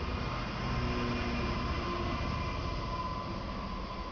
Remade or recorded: recorded